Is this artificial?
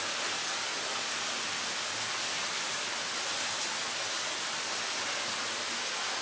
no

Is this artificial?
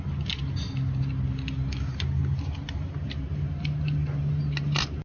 no